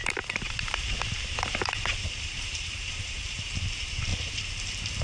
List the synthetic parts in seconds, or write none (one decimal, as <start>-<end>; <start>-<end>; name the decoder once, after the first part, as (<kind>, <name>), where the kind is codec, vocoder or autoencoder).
0.0-5.0 (vocoder, BigVGAN v2)